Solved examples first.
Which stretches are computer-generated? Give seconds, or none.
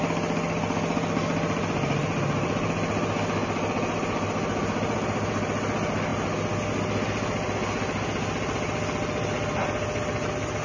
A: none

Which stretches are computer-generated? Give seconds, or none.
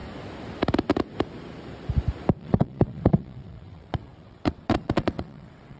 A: 2.4-5.8 (vocoder, WaveNeXt)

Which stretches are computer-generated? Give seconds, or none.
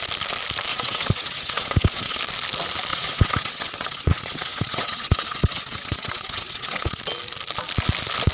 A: 0.7-2.2 (vocoder, WaveNeXt); 2.9-7.0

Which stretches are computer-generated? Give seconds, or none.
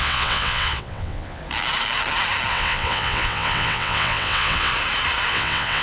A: 0.0-1.4 (vocoder, WaveNeXt); 2.5-4.7; 5.3-5.8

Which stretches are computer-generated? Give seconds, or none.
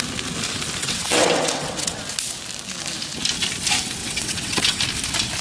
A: 0.8-2.0 (vocoder, WaveNeXt); 4.0-4.8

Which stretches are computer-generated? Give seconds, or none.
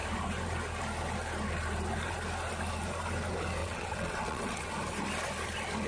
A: 3.6-4.7 (vocoder, WaveNeXt)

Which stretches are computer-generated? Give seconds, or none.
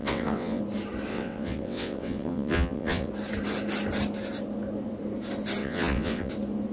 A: 0.0-0.6 (vocoder, WaveNeXt); 1.1-3.1; 5.6-6.3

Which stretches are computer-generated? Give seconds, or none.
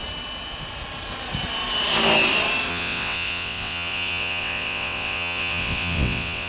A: 2.7-6.5 (vocoder, WaveNeXt)